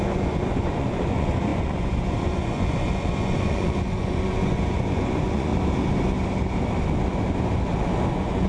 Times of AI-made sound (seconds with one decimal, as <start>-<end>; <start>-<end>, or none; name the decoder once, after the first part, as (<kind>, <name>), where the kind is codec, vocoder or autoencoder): 0.0-5.5 (vocoder, Vocos); 8.1-8.5